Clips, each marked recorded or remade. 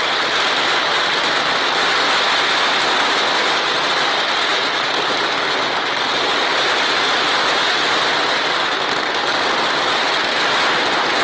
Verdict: recorded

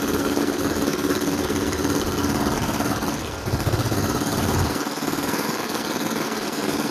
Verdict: remade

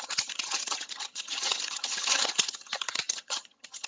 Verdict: remade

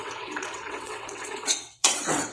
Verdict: remade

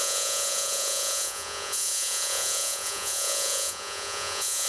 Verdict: remade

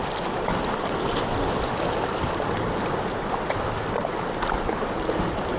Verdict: recorded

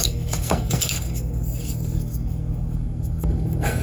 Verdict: remade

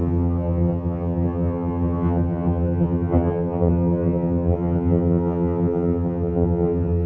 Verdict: remade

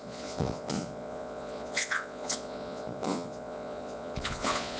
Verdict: remade